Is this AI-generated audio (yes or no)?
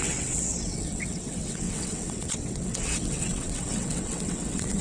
yes